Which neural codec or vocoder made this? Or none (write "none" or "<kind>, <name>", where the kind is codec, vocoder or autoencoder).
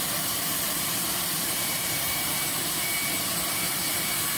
vocoder, BigVGAN v2